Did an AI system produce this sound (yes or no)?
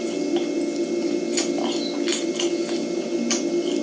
no